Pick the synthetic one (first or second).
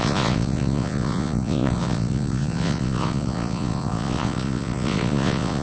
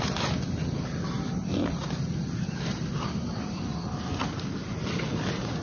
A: first